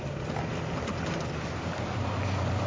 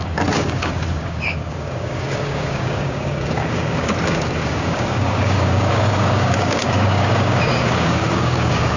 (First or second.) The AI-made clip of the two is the second